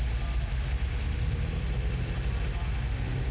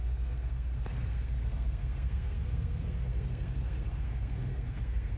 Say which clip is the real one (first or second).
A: first